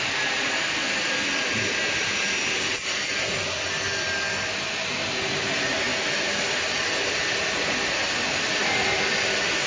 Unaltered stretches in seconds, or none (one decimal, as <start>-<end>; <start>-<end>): 0.0-9.7